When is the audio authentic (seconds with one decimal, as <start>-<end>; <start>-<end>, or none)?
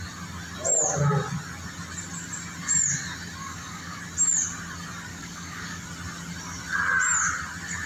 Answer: 0.0-3.4; 4.0-5.1; 5.8-7.9